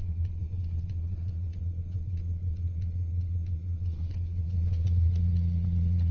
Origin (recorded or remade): remade